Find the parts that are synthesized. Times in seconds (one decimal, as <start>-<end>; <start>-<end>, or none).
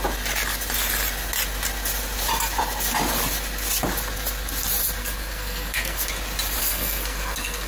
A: 5.0-6.1; 6.6-7.7